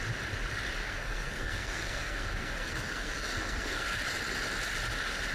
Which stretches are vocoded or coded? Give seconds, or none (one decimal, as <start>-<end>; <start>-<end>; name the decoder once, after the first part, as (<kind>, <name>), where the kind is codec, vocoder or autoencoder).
0.8-4.0 (codec, SNAC)